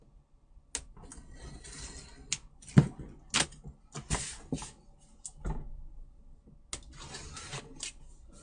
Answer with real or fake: real